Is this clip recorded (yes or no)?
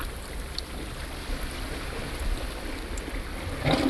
yes